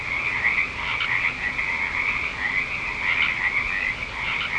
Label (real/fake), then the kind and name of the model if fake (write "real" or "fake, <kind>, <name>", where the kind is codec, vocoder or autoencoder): real